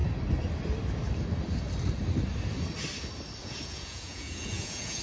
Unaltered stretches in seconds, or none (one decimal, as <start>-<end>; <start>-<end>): 0.0-3.4